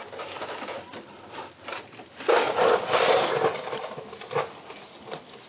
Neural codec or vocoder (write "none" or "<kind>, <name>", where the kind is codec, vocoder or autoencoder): none